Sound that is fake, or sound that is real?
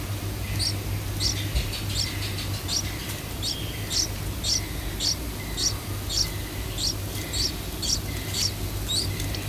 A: real